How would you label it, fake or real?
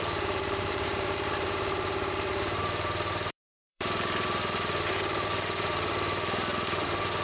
fake